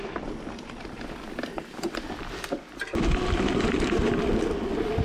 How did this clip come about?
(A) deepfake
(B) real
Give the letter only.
B